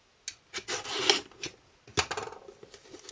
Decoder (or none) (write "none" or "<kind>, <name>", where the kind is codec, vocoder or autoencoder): none